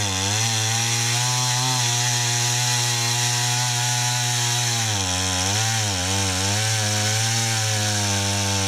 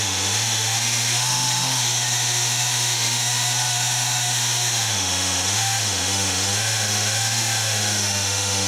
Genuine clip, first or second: first